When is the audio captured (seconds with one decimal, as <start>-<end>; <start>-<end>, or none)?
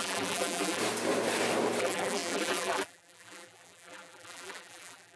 0.8-1.8